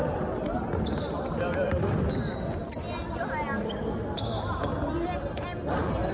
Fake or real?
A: real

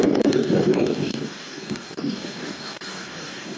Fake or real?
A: fake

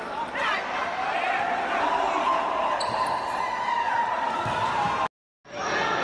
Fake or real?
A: real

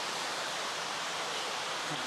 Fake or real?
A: fake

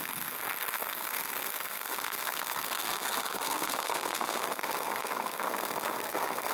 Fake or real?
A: fake